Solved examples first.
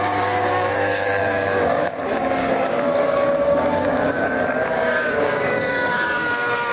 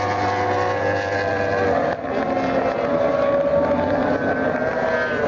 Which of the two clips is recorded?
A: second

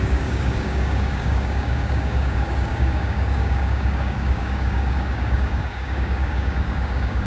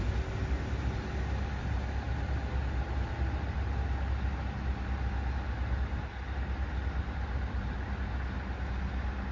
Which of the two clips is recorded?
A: second